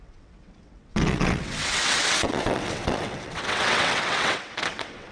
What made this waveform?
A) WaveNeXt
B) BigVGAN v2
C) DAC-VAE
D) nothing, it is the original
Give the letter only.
A